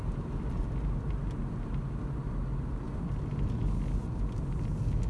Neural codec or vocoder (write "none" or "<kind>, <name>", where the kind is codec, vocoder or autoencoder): none